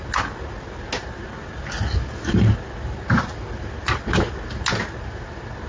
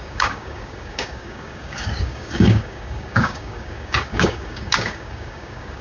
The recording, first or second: first